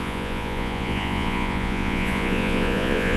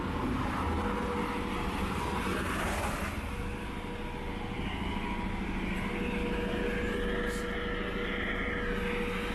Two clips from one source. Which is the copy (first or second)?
first